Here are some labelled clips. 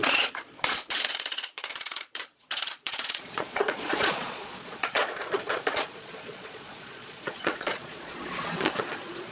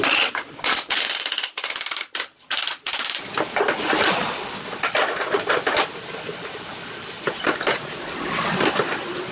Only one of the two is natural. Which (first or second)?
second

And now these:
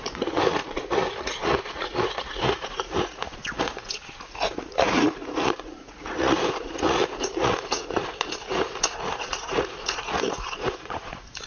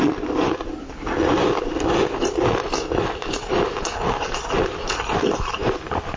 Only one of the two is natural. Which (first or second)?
second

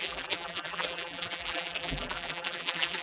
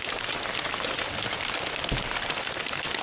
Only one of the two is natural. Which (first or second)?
second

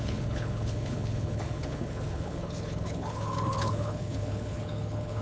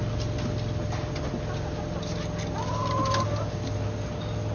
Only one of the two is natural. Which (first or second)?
second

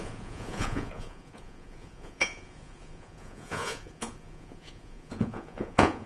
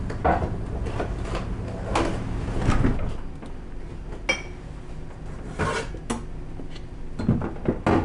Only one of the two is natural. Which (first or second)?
second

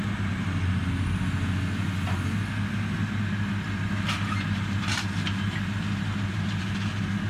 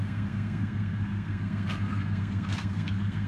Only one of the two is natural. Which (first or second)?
first